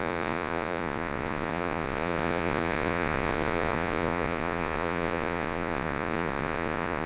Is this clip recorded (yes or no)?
no